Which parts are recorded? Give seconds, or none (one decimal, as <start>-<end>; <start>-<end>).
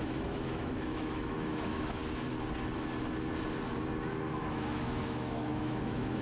2.0-4.3